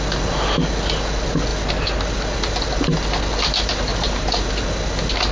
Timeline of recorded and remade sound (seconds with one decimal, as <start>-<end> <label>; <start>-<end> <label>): 0.0-3.9 recorded; 3.9-4.5 remade; 4.5-5.3 recorded